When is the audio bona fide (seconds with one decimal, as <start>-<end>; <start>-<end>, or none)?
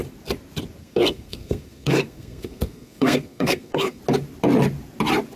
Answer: 0.0-0.8; 4.0-5.4